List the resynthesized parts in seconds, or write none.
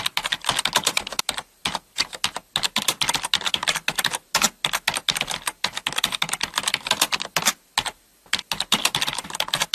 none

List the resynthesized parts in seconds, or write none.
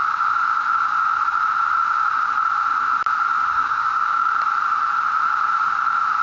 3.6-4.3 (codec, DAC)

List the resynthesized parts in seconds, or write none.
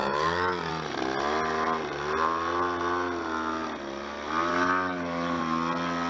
0.0-0.7 (codec, DAC); 4.5-5.4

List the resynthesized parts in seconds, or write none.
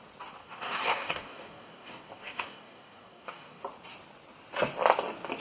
0.4-3.6 (codec, DAC)